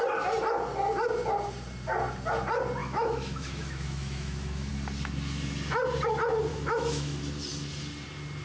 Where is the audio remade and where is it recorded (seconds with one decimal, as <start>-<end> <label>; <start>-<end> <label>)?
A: 0.0-2.8 recorded; 2.8-4.7 remade; 4.7-6.5 recorded; 6.5-7.2 remade; 7.2-8.4 recorded